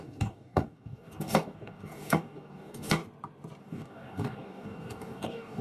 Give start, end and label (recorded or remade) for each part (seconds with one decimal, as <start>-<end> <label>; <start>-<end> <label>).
0.0-3.0 remade; 3.0-3.6 recorded; 3.6-5.6 remade